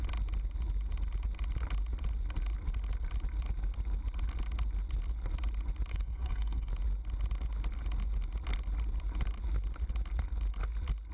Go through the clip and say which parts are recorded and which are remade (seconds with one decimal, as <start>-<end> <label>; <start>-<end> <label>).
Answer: 0.0-5.9 recorded; 5.9-6.7 remade; 6.7-11.1 recorded